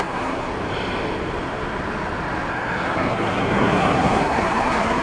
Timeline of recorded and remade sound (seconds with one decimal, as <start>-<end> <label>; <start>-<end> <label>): 0.0-0.5 remade; 0.5-2.5 recorded; 2.5-5.0 remade